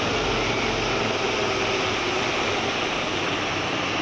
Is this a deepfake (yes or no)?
no